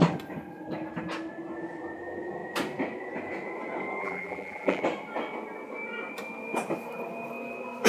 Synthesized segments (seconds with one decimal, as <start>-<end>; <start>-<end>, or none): 4.0-4.8